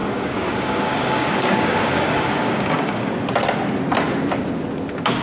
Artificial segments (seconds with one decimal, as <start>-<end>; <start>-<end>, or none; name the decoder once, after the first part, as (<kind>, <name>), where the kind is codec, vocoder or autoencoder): 0.0-3.1 (codec, DAC)